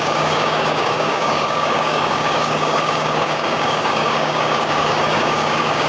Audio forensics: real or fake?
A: fake